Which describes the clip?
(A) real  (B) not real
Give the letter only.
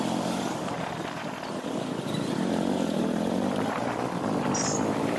B